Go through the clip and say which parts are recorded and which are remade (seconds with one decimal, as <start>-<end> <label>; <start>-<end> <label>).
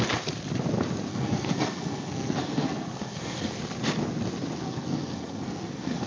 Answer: 0.0-1.1 recorded; 1.1-3.6 remade; 3.6-4.6 recorded; 4.6-6.1 remade